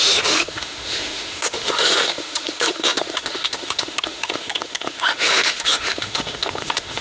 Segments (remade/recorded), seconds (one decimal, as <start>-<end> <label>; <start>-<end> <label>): 0.0-7.0 remade